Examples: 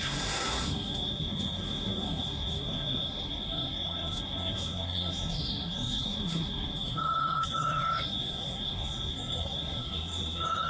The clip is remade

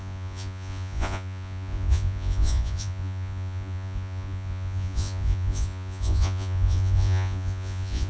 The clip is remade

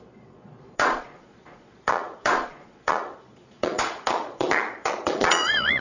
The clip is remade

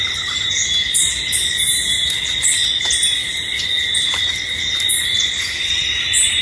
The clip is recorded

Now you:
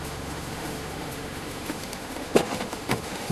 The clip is remade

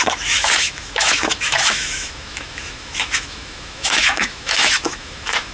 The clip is remade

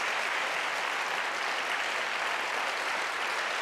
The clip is recorded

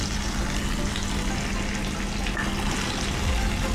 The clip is recorded